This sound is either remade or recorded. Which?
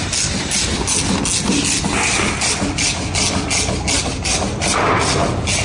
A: recorded